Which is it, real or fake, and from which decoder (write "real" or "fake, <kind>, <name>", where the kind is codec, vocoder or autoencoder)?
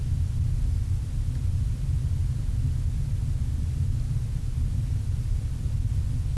real